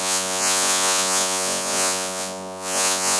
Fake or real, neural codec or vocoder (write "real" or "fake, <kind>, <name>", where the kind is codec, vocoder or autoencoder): fake, vocoder, Vocos